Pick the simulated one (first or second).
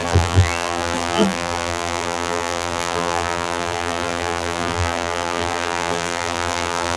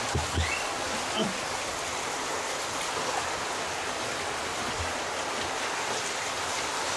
first